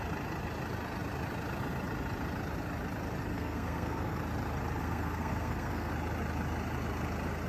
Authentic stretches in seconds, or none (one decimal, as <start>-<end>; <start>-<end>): 0.0-3.3; 4.2-4.8; 5.9-7.5